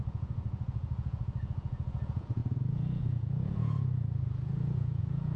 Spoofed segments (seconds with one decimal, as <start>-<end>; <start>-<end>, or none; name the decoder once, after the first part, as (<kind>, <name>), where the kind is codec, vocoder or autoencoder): 0.0-5.4 (vocoder, Vocos)